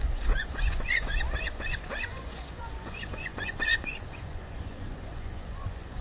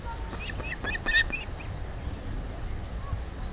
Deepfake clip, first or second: first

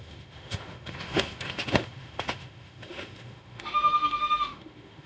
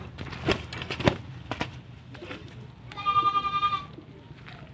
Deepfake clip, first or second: first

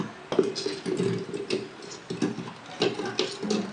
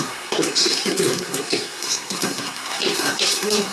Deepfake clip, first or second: second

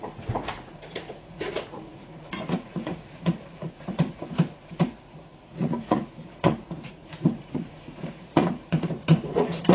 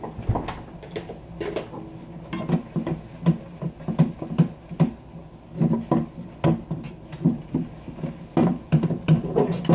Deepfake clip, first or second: first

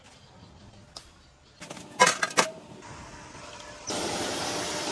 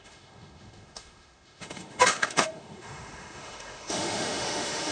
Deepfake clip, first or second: second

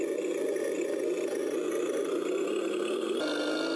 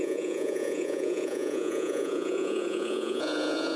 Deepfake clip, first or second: second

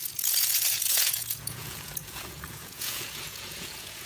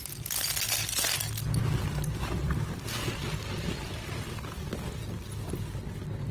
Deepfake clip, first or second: first